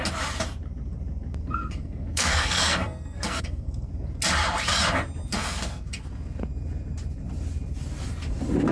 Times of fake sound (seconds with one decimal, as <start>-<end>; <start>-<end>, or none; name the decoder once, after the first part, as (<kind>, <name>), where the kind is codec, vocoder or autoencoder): 1.4-3.9 (codec, SNAC); 5.3-6.0